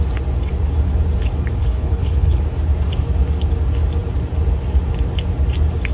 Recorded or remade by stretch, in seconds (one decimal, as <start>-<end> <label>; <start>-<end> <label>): 0.0-1.6 recorded; 1.6-2.4 remade; 2.4-5.9 recorded